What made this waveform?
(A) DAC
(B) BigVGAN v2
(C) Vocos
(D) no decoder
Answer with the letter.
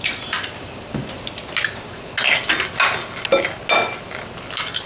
D